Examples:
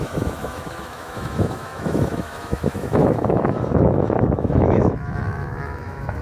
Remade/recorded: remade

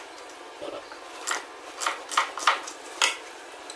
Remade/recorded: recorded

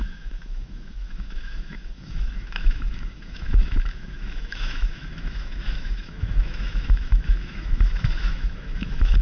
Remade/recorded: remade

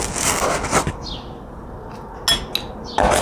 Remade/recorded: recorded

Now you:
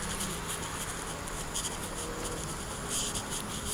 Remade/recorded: recorded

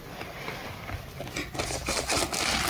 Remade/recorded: recorded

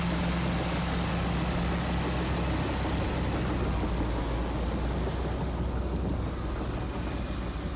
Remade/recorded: recorded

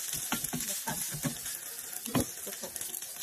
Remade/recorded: recorded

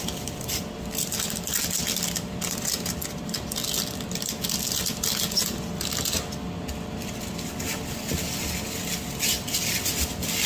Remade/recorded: recorded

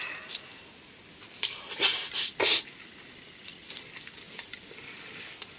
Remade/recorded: recorded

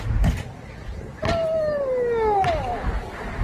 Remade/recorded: recorded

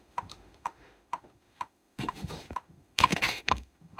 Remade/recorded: remade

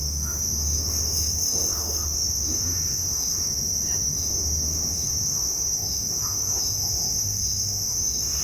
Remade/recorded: remade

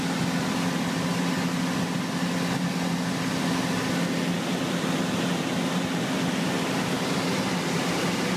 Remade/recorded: recorded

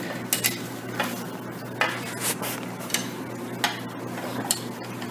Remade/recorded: recorded